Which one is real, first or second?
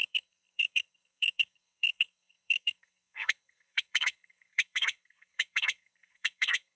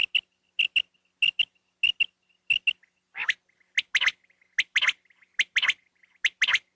second